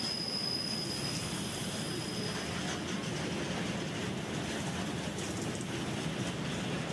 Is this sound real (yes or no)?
yes